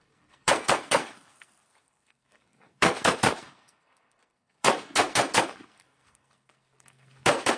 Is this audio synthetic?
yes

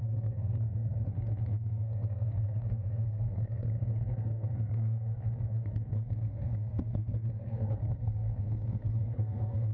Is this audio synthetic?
yes